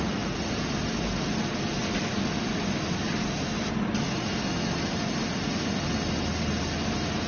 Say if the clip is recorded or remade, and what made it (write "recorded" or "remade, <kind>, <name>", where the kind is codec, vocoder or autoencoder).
recorded